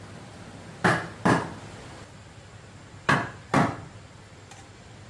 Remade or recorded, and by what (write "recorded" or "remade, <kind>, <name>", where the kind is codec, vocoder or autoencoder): recorded